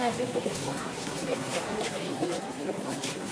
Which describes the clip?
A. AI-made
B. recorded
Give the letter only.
A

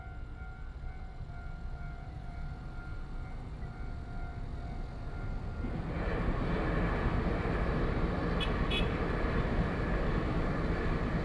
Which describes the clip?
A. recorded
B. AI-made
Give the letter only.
A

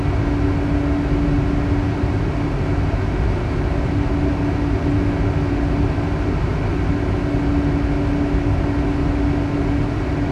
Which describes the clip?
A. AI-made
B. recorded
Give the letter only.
B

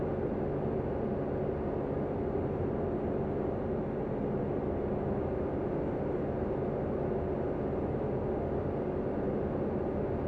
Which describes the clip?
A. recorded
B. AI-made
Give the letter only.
A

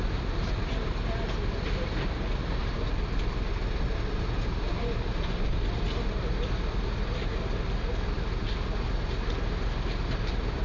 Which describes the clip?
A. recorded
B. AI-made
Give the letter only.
A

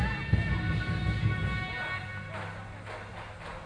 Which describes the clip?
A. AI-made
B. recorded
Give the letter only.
B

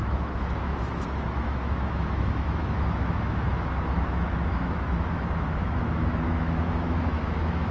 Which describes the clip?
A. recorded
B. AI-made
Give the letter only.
B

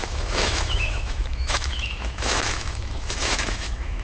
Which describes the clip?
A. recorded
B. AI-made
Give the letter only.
B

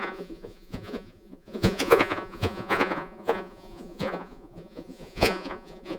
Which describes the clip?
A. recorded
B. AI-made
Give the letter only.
B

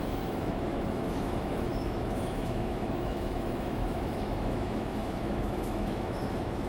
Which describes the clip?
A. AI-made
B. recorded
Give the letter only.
A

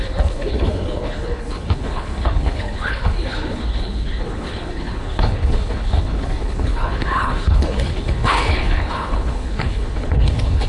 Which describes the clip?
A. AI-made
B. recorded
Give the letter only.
A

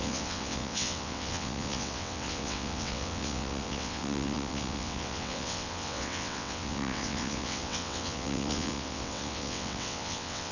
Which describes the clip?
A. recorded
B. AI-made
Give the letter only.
B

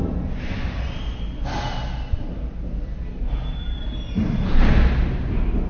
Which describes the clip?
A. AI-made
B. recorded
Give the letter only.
B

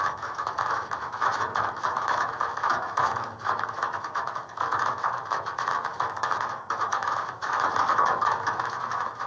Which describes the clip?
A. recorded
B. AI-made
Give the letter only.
B